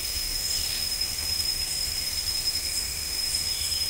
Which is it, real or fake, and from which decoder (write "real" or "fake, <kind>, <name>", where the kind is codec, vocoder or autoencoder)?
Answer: fake, autoencoder, DAC-VAE